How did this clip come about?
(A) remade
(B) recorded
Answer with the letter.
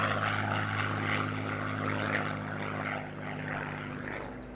B